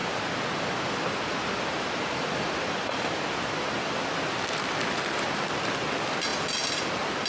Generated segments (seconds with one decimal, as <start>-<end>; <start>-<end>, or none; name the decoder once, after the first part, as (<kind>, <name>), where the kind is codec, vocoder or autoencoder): 0.0-7.3 (vocoder, BigVGAN v2)